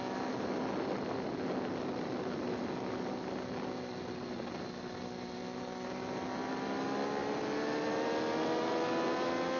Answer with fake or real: real